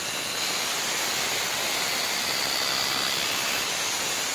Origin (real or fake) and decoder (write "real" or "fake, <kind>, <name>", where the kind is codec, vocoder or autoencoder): fake, vocoder, BigVGAN v2